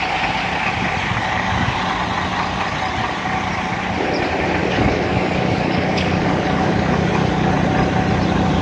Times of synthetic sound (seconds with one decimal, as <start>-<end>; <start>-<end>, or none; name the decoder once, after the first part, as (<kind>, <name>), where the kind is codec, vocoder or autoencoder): 1.2-1.8 (codec, DAC); 4.6-7.5